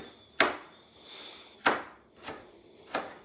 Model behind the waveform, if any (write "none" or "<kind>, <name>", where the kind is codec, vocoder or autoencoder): none